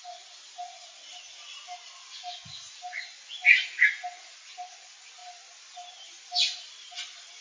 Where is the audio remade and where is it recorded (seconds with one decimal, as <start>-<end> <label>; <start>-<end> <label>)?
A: 0.0-7.4 recorded